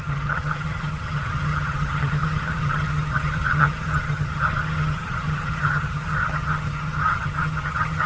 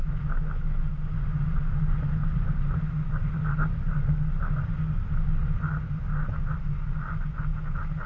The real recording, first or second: second